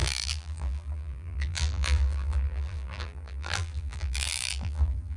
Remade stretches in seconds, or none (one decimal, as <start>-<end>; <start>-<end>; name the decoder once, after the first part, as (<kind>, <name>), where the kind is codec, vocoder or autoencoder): 0.0-5.2 (vocoder, BigVGAN v2)